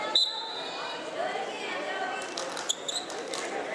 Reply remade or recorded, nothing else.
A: remade